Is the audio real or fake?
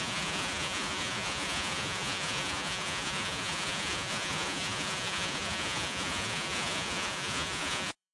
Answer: fake